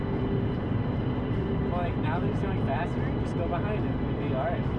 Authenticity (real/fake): real